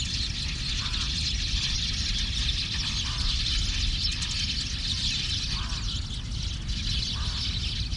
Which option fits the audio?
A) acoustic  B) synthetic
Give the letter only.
A